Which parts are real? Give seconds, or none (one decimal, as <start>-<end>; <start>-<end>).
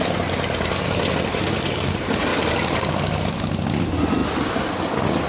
0.0-1.3; 1.9-2.3; 3.4-5.3